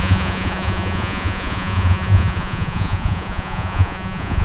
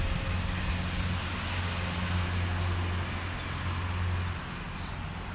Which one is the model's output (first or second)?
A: first